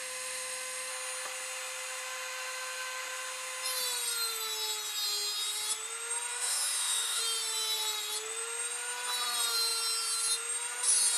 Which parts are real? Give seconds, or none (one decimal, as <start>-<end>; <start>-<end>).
0.9-6.3; 7.2-11.2